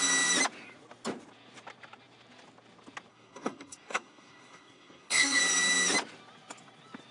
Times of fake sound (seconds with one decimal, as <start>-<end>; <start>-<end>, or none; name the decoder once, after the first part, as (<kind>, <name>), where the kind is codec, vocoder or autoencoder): 3.1-5.4 (codec, SNAC)